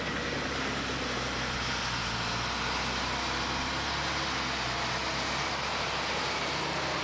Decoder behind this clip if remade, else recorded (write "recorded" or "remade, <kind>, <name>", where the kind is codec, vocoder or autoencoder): recorded